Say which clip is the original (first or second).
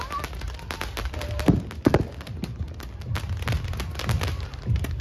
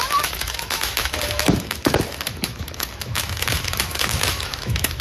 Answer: first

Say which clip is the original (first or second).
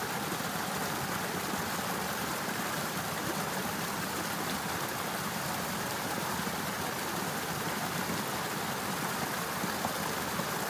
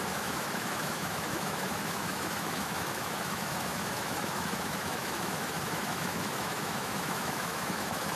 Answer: first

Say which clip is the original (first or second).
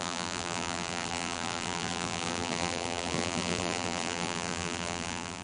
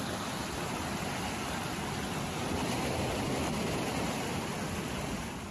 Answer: second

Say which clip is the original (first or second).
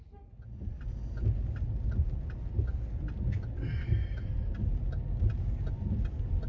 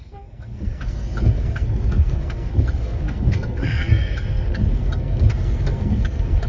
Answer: first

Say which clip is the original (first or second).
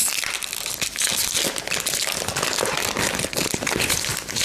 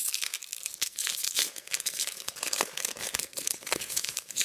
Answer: first